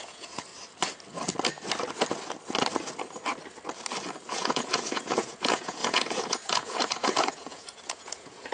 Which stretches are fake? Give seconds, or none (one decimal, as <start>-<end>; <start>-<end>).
0.0-0.5; 4.3-8.5